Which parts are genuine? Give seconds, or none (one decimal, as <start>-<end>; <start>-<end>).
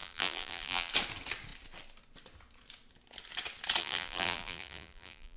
0.9-3.8